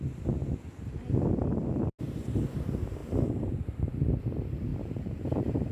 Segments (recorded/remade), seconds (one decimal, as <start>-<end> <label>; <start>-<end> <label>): 0.0-4.7 recorded; 4.7-5.7 remade